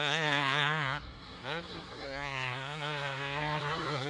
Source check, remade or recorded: remade